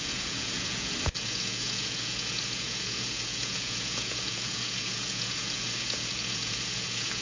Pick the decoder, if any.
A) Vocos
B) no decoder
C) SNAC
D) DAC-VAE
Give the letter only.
A